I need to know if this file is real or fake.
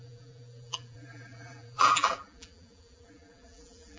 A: fake